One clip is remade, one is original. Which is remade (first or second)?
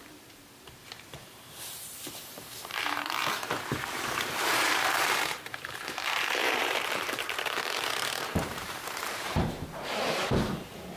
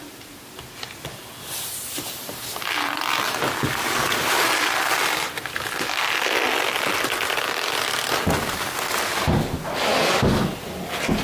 first